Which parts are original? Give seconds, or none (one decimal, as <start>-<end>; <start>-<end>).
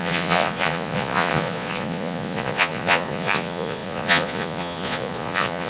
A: none